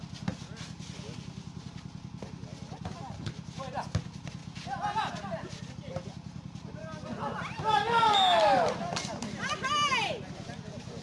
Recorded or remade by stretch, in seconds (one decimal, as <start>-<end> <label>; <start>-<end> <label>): 0.0-10.0 recorded; 10.0-10.6 remade; 10.6-11.0 recorded